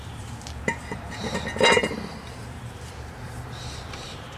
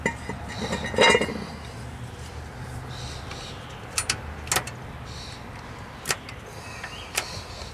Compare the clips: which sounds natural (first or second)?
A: second